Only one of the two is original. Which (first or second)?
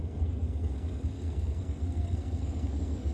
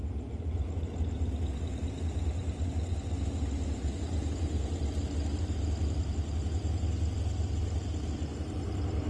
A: second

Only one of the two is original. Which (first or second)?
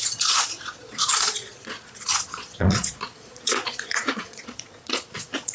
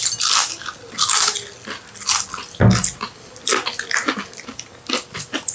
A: second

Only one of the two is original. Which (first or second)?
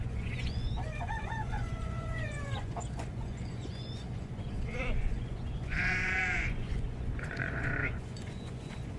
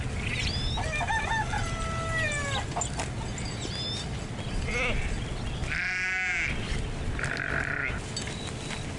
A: second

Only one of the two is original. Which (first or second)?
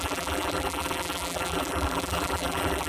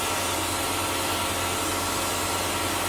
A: second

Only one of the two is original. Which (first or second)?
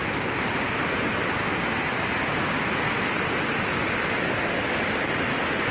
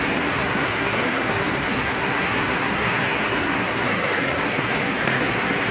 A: first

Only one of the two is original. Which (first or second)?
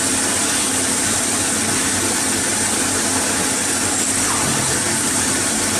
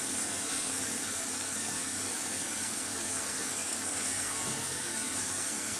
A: first